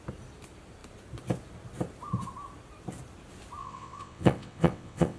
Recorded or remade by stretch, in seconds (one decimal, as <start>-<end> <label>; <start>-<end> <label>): 0.0-3.6 recorded; 3.6-5.2 remade